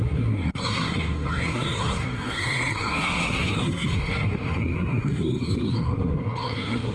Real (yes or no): no